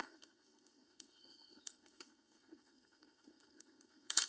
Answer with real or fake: fake